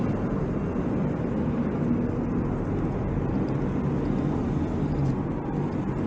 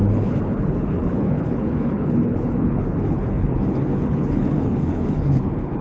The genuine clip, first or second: first